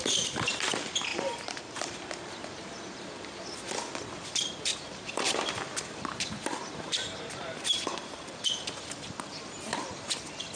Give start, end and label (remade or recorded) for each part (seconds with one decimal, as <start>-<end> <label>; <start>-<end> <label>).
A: 0.0-1.1 recorded; 1.1-2.0 remade; 2.0-4.7 recorded; 4.7-8.9 remade; 8.9-10.6 recorded